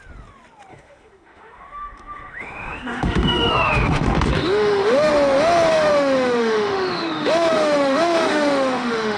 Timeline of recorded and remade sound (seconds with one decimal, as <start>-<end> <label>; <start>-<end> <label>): 0.0-0.7 recorded; 0.7-5.1 remade; 5.1-5.7 recorded; 5.7-9.2 remade